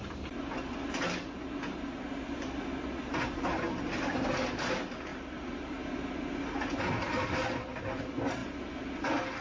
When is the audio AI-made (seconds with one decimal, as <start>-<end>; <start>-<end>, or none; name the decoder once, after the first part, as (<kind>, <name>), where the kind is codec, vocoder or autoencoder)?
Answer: none